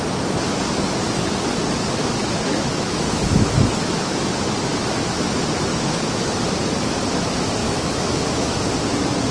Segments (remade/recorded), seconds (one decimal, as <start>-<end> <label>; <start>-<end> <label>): 0.0-2.2 recorded; 2.2-4.2 remade; 4.2-5.7 recorded; 5.7-6.3 remade; 6.3-7.6 recorded; 7.6-8.6 remade; 8.6-9.3 recorded